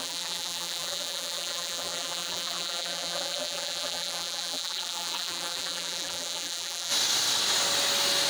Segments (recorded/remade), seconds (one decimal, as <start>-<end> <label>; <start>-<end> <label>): 0.0-6.9 remade; 6.9-8.3 recorded